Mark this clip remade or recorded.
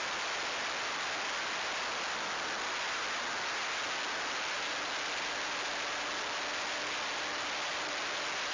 recorded